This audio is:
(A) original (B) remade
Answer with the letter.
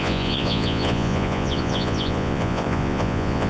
B